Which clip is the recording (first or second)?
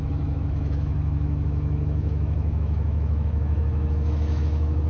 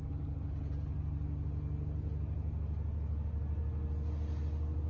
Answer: second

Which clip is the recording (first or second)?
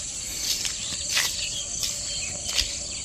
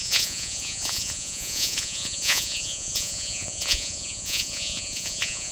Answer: first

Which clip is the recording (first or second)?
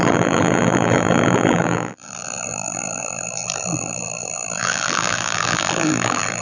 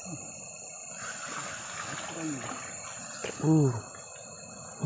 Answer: second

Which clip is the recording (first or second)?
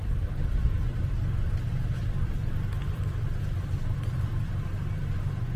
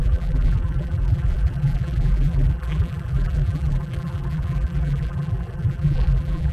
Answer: first